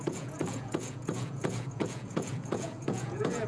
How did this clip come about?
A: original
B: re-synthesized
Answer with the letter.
B